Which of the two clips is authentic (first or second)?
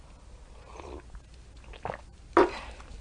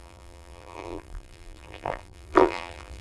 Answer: first